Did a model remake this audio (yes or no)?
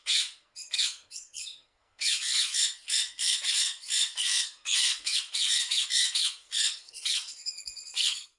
yes